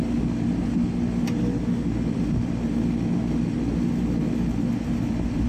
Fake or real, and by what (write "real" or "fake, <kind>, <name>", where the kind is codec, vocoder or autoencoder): real